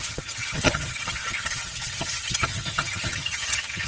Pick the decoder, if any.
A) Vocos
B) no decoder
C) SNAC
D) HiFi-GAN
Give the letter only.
D